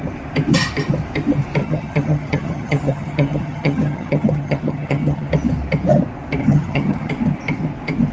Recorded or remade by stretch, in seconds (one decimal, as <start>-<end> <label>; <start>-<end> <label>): 0.0-1.6 recorded; 1.6-5.3 remade; 5.3-6.4 recorded; 6.4-7.1 remade; 7.1-8.1 recorded